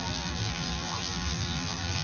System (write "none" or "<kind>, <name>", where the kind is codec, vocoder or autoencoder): vocoder, BigVGAN v2